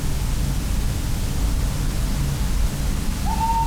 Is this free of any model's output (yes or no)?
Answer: yes